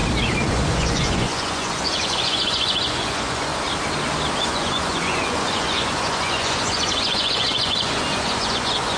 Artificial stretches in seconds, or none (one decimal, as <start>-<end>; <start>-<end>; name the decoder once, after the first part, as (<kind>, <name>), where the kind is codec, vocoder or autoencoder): 0.5-3.5 (vocoder, Vocos); 4.4-9.0